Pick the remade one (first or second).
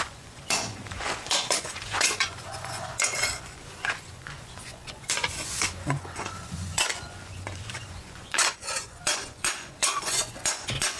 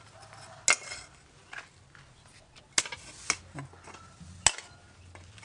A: first